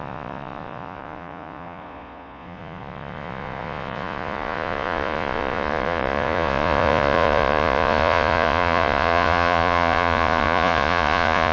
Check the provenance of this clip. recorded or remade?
remade